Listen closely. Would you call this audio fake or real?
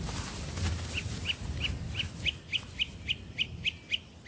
real